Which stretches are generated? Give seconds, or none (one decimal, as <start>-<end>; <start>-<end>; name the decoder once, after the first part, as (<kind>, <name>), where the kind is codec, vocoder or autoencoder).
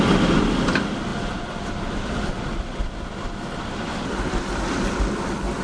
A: 1.1-2.3 (vocoder, BigVGAN v2)